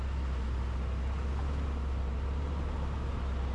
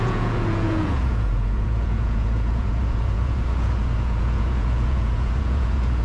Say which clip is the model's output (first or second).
second